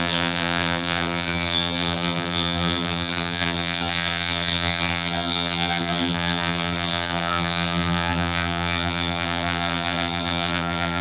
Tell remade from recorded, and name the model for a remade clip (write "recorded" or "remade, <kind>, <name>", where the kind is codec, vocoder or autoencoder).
remade, vocoder, BigVGAN v2